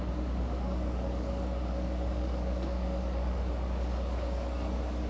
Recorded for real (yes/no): no